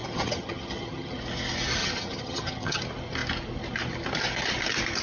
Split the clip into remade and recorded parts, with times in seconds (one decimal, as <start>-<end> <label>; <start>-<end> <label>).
0.0-1.2 remade; 1.2-1.8 recorded; 1.8-2.8 remade; 2.8-5.0 recorded